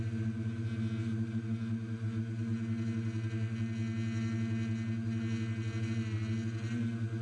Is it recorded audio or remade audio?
recorded